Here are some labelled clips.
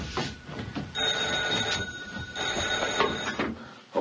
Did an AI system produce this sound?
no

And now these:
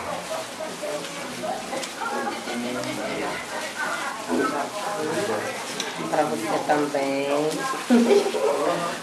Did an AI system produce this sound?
no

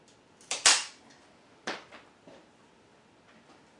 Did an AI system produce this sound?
no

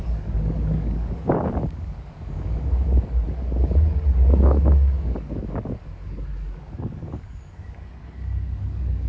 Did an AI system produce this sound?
yes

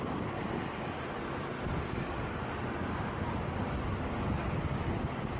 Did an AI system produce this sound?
no